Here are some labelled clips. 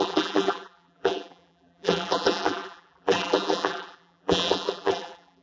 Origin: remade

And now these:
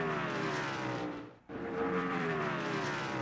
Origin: remade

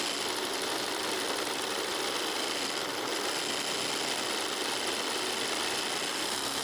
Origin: recorded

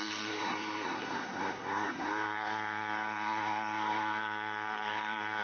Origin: remade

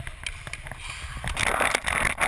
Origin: recorded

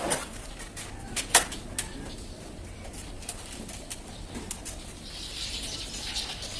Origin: recorded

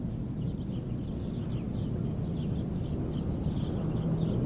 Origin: recorded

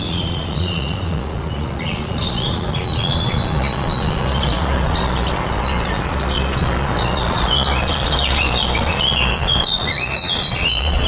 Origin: remade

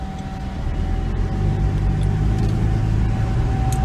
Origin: recorded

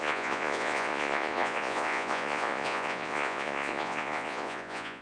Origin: remade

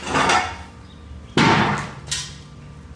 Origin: recorded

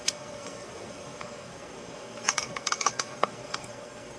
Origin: remade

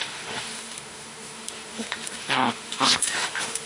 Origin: remade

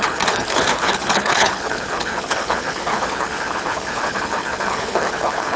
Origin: remade